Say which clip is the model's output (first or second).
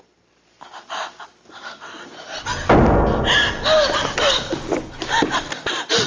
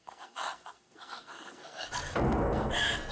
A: second